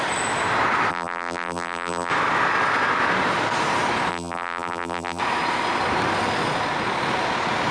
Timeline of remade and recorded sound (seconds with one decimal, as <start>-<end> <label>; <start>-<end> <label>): 0.0-0.9 recorded; 0.9-2.1 remade; 2.1-4.1 recorded; 4.1-5.2 remade; 5.2-7.7 recorded